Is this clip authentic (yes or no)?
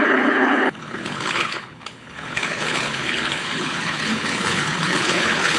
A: no